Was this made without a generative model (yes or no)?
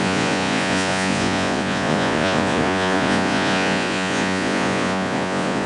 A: no